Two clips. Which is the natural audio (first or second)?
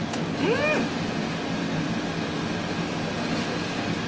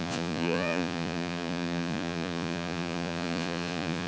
first